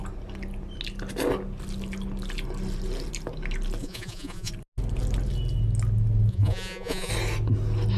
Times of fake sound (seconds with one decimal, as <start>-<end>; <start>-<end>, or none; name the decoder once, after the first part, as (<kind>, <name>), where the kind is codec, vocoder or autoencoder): 3.8-4.5 (vocoder, Vocos); 6.3-7.1